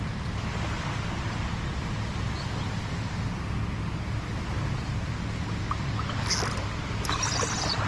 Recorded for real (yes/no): yes